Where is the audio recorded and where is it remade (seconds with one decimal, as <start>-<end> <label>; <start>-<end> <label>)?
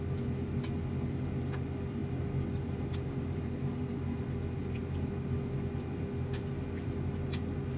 0.0-7.8 recorded